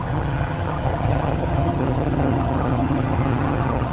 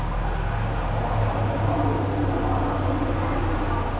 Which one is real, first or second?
second